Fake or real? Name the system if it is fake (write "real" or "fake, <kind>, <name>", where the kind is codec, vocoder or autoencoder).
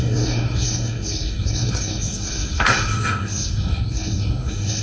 fake, codec, SNAC